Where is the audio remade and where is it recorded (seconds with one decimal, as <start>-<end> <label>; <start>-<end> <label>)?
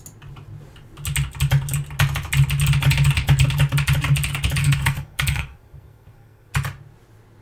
0.0-4.6 recorded; 4.6-6.5 remade; 6.5-7.4 recorded